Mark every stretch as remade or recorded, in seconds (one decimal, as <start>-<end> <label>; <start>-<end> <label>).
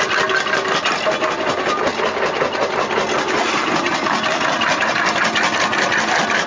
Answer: 0.0-6.5 recorded